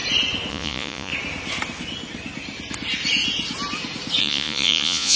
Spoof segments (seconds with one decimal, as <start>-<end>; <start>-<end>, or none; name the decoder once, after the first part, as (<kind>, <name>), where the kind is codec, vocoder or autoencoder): 0.5-1.1 (vocoder, Vocos); 4.2-5.2